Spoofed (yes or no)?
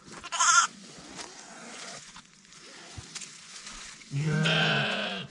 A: yes